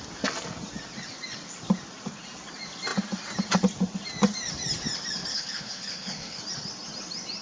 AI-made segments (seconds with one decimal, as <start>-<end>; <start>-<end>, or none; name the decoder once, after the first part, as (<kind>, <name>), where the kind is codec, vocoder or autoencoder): 5.3-6.4 (codec, HILCodec)

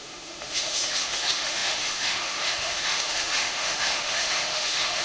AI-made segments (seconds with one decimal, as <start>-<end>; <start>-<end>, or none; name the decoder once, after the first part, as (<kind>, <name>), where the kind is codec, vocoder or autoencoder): 0.0-5.0 (autoencoder, DAC-VAE)

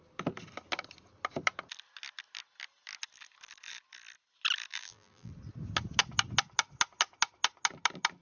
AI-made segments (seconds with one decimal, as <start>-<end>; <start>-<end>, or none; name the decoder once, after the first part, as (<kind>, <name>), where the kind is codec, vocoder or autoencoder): 4.7-5.3 (vocoder, BigVGAN v2)